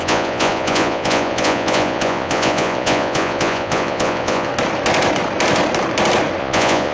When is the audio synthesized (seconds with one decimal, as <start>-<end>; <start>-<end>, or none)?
0.0-4.5; 6.4-6.9